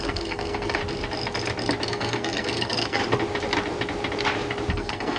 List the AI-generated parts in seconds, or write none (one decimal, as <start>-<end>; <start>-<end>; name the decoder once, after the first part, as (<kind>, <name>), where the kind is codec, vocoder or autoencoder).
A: 0.0-0.8 (codec, SNAC); 1.9-3.0; 4.7-5.2